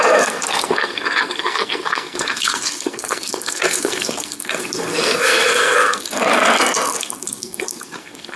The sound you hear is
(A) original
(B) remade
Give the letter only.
B